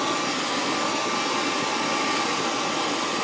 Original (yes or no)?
yes